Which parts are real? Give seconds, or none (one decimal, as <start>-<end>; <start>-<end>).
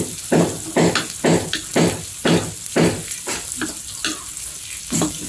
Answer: 0.0-5.3